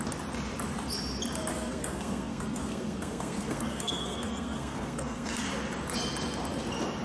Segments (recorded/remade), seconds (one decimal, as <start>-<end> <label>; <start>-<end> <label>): 0.0-1.5 recorded; 1.5-5.4 remade; 5.4-7.0 recorded